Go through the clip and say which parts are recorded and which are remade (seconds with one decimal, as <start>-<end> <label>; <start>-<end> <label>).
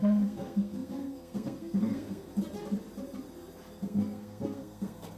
0.0-2.3 remade; 2.3-3.8 recorded; 3.8-5.2 remade